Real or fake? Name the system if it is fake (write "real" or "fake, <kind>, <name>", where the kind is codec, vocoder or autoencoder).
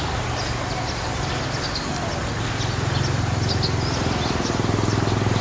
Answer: real